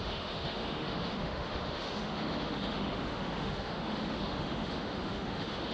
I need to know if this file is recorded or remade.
remade